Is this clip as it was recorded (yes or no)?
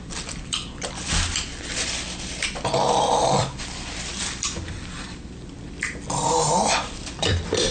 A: no